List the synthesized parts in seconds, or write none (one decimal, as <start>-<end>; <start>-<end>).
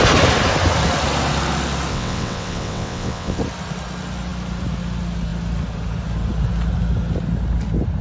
1.9-3.4